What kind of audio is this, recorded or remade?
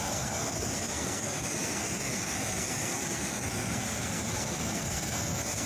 remade